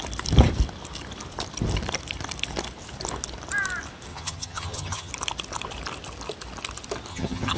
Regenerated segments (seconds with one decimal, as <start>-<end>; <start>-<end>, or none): 4.1-5.1; 7.1-7.6